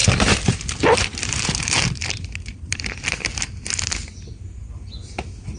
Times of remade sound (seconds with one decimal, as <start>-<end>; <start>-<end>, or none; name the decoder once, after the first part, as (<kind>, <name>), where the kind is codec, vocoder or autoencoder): 0.0-3.4 (vocoder, BigVGAN v2)